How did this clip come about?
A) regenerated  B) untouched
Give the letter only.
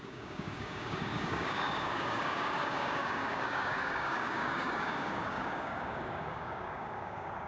A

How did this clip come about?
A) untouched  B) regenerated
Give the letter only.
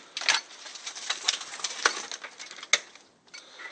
A